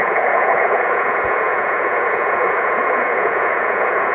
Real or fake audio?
fake